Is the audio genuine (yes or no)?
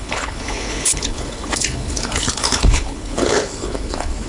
no